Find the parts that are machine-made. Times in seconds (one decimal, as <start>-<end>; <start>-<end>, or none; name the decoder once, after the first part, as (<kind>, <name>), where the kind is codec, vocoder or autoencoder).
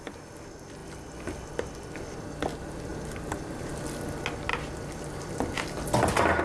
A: 2.9-3.7 (vocoder, BigVGAN v2); 4.5-5.8